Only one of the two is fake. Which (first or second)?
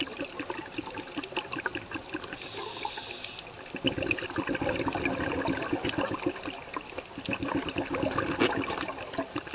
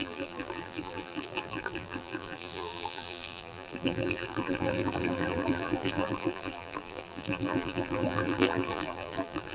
second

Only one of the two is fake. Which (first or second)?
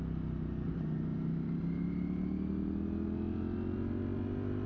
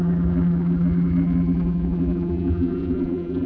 second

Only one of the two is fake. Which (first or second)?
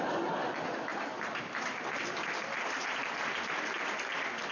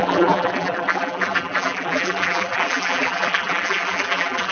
second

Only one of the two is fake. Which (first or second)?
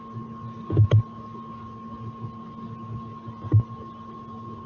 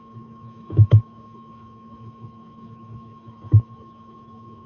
second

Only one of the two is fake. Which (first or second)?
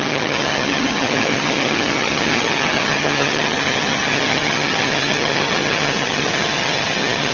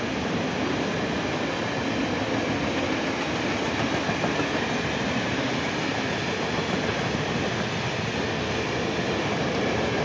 first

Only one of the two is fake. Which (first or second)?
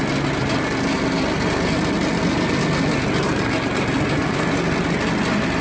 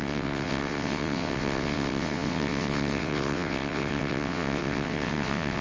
second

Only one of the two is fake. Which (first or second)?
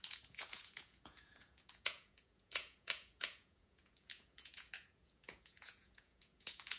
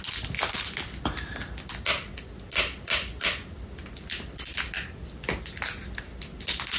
first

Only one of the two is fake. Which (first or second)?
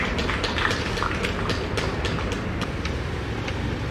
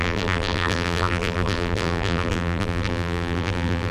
second